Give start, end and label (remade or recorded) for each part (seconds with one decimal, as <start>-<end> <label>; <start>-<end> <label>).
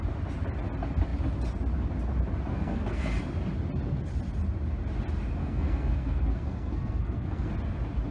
0.0-2.5 recorded; 2.5-3.1 remade; 3.1-5.4 recorded; 5.4-7.5 remade; 7.5-8.1 recorded